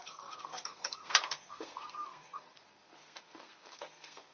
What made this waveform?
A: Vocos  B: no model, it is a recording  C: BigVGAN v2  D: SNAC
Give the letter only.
D